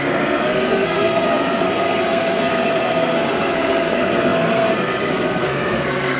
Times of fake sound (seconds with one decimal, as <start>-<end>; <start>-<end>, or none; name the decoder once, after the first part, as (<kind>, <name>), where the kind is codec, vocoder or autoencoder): 0.0-6.2 (codec, SNAC)